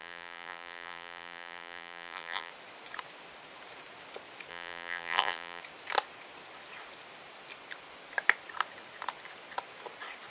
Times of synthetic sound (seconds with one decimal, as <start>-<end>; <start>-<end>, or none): 0.0-2.5; 4.5-5.6